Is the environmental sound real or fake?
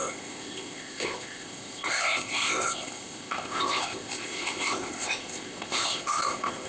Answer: fake